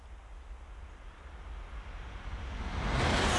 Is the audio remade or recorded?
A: recorded